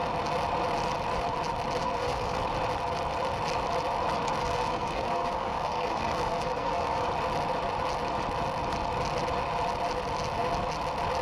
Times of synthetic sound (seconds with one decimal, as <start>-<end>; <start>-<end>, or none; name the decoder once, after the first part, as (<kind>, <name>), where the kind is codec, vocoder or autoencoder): 1.8-2.4 (codec, SNAC); 4.4-7.1